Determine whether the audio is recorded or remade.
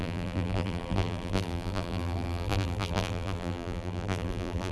remade